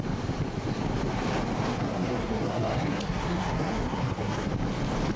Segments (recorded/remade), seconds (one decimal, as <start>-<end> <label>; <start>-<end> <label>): 0.0-1.7 recorded; 1.7-4.5 remade; 4.5-5.2 recorded